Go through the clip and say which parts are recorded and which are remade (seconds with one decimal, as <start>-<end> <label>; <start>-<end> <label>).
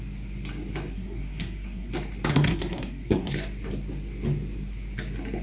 0.0-0.9 recorded; 0.9-1.9 remade; 1.9-2.3 recorded; 2.3-3.3 remade; 3.3-5.4 recorded